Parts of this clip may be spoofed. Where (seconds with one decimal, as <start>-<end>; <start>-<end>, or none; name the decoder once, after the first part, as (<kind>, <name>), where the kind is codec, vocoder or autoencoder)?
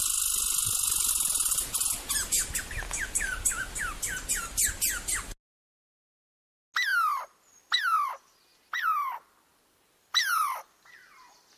none